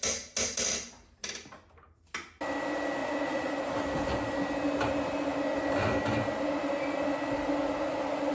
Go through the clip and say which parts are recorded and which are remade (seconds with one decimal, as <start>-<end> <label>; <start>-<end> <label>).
0.0-3.0 recorded; 3.0-3.5 remade; 3.5-8.3 recorded